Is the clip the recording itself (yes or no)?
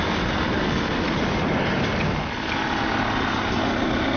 yes